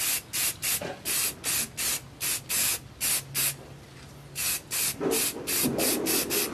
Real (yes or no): yes